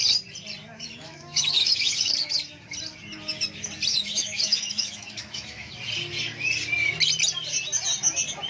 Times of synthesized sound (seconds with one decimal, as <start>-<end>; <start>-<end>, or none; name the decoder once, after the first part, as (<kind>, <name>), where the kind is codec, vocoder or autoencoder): 0.6-2.1 (autoencoder, DAC-VAE); 3.9-5.7